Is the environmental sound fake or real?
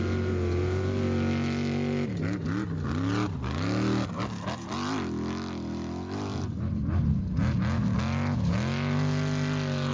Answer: real